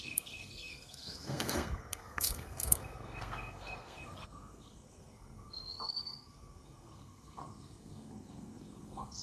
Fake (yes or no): yes